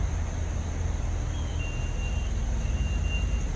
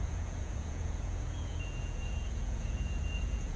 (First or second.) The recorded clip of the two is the first